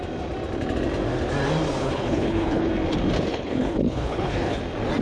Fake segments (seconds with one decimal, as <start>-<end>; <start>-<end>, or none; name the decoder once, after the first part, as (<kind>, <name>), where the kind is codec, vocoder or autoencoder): 1.8-2.7 (codec, HILCodec); 3.3-4.6